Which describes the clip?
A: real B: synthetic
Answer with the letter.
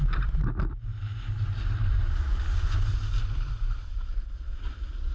A